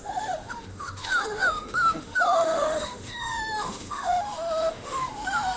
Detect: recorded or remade remade